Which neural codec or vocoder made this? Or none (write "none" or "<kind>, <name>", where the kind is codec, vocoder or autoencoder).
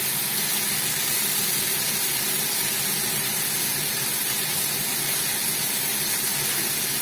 none